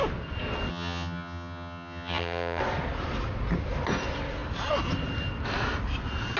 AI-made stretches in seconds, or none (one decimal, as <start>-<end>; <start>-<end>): 0.7-2.6